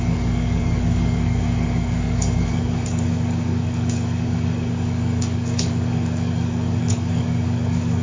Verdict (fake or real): fake